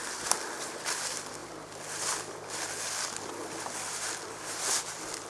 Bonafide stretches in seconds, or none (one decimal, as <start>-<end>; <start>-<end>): 0.0-5.3